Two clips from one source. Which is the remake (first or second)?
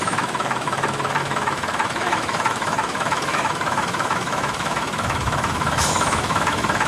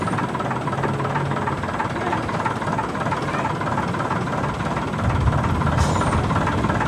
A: first